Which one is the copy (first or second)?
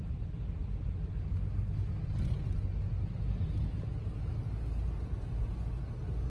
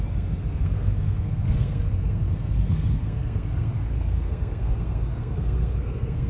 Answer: second